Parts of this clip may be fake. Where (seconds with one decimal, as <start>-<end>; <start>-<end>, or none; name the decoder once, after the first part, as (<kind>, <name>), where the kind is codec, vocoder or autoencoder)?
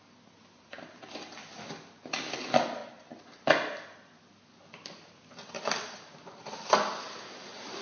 none